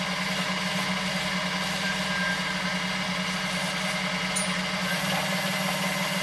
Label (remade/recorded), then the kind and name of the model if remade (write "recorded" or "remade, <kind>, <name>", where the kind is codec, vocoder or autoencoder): recorded